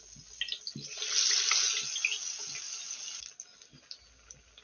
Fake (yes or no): no